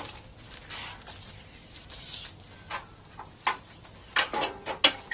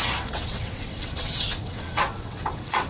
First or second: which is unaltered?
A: first